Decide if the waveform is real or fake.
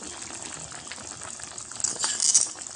real